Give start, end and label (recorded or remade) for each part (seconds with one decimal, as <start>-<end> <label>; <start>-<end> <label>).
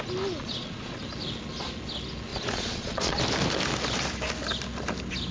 0.0-0.4 recorded; 0.4-1.0 remade; 1.0-2.3 recorded; 2.3-3.2 remade; 3.2-5.3 recorded